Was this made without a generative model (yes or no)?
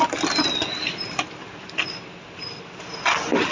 yes